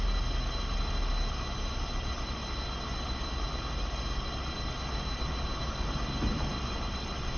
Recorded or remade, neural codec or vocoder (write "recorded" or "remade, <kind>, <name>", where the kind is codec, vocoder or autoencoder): recorded